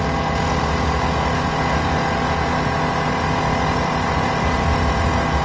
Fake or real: real